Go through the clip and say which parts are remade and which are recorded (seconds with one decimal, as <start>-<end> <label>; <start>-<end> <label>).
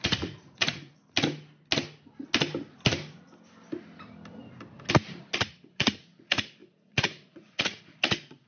0.0-1.0 remade; 1.0-5.5 recorded; 5.5-8.5 remade